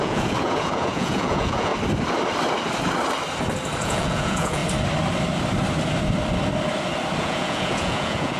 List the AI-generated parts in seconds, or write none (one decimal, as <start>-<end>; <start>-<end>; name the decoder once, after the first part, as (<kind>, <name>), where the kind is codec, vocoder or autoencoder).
0.0-1.7 (vocoder, Vocos); 3.8-4.6; 7.2-8.4